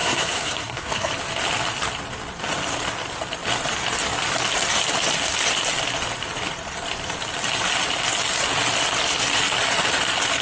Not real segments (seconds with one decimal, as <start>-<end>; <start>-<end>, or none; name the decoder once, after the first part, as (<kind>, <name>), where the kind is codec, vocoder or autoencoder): 0.0-1.1 (codec, SNAC)